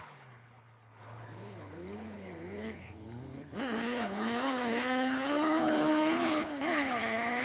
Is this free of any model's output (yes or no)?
no